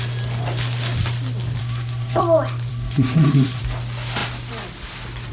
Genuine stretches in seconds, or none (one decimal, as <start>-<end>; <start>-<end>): 0.0-1.6; 2.2-2.7; 3.6-5.3